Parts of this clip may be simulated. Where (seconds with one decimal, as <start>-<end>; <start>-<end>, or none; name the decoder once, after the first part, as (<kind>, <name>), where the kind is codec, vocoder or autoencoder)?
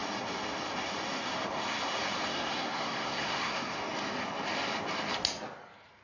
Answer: 2.3-3.8 (codec, SNAC)